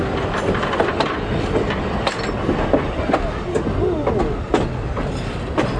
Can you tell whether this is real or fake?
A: real